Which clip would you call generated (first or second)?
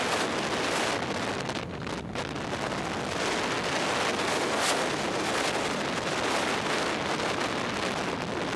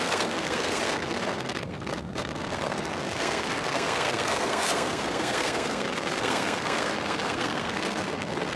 second